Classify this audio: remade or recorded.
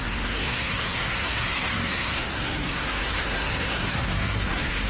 remade